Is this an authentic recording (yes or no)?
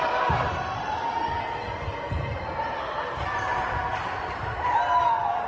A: yes